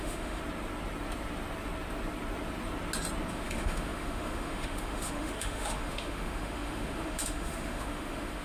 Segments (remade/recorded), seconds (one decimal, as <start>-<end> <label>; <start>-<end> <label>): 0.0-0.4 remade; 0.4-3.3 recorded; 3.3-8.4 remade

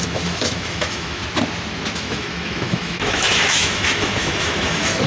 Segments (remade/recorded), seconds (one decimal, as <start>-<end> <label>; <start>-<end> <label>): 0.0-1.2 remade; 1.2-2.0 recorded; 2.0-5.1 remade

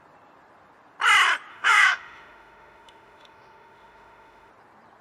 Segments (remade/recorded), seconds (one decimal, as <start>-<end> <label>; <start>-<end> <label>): 0.0-1.5 recorded; 1.5-4.5 remade; 4.5-5.0 recorded